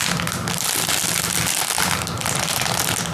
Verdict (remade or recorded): recorded